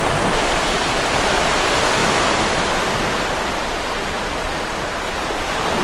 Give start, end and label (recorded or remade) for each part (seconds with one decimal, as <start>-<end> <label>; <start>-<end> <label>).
0.0-5.8 recorded